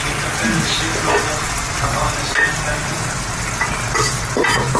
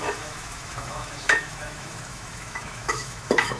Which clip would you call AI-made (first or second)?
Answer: second